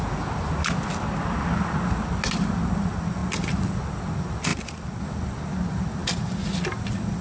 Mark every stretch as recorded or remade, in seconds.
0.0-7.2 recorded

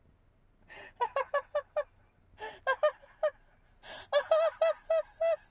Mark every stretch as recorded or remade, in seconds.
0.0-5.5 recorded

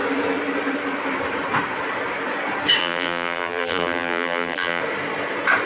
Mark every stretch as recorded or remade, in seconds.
0.0-2.8 recorded; 2.8-4.8 remade; 4.8-5.7 recorded

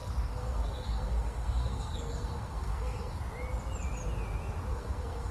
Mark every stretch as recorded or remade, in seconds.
0.0-3.2 remade; 3.2-4.7 recorded; 4.7-5.3 remade

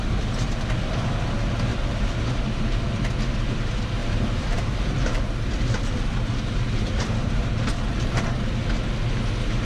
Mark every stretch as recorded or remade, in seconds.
0.0-1.7 recorded; 1.7-2.8 remade; 2.8-4.0 recorded; 4.0-5.8 remade; 5.8-6.3 recorded; 6.3-8.5 remade; 8.5-9.6 recorded